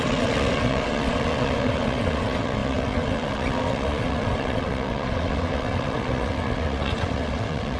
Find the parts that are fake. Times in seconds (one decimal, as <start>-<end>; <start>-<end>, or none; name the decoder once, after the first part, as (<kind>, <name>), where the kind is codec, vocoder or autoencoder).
0.0-7.8 (vocoder, WaveNeXt)